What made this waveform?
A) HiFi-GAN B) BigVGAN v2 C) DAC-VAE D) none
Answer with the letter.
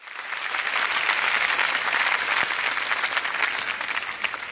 D